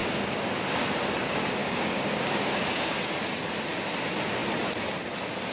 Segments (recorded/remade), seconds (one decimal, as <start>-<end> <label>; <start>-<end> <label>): 0.0-0.5 remade; 0.5-1.6 recorded; 1.6-3.1 remade; 3.1-5.5 recorded